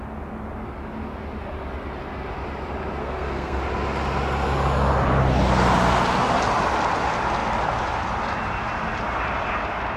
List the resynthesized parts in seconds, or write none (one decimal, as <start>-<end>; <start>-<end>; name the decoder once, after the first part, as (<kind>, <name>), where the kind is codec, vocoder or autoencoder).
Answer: 3.0-3.6 (codec, SNAC)